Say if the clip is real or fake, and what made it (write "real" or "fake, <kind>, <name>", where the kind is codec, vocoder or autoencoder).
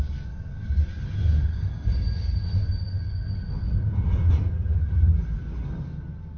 real